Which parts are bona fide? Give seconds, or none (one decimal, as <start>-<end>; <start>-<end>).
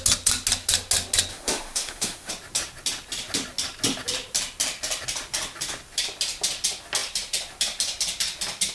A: 0.0-1.3; 2.3-8.7